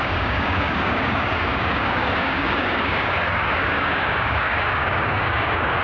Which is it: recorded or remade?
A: remade